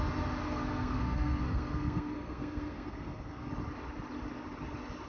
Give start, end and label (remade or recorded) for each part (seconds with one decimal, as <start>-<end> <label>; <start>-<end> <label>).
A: 0.0-0.4 recorded; 0.4-3.5 remade; 3.5-5.1 recorded